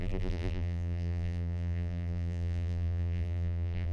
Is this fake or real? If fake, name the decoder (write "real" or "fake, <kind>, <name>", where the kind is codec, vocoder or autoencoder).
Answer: fake, vocoder, BigVGAN v2